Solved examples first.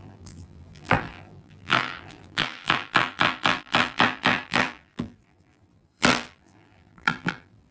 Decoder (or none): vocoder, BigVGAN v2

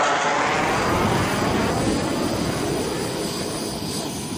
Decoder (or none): none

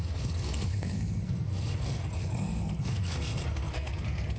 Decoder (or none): codec, SNAC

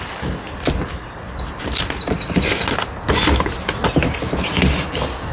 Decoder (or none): none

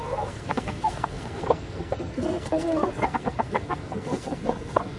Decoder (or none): codec, SNAC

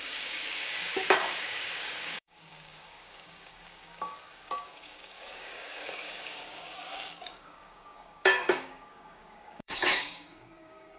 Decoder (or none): codec, DAC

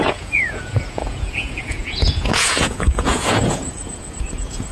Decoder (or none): vocoder, Vocos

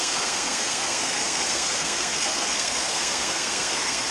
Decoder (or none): codec, SNAC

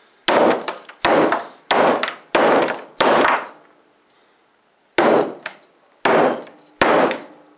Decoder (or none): none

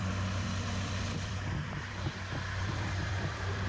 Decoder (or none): vocoder, BigVGAN v2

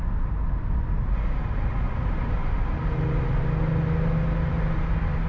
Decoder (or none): none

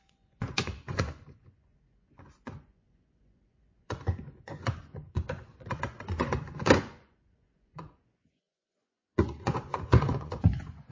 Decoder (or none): vocoder, Vocos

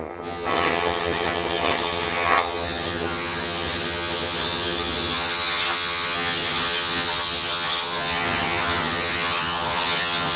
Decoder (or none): vocoder, HiFi-GAN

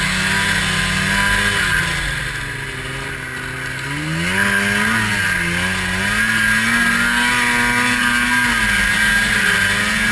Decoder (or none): none